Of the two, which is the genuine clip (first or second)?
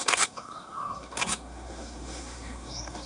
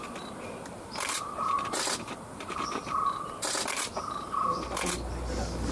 second